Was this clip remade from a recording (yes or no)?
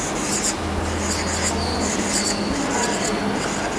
no